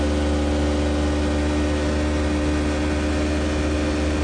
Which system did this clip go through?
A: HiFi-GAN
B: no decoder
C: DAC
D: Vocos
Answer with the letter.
B